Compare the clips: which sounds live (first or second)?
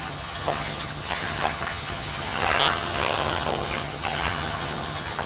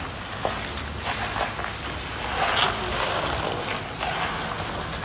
second